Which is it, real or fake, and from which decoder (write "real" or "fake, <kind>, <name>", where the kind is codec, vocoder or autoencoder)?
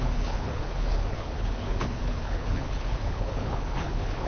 fake, codec, HILCodec